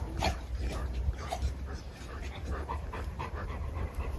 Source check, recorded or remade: remade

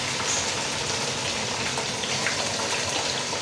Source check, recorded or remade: recorded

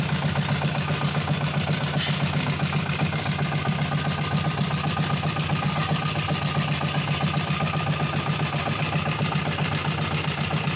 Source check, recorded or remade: recorded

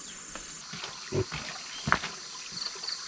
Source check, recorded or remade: recorded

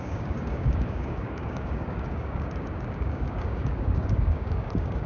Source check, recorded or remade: remade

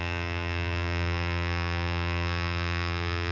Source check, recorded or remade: remade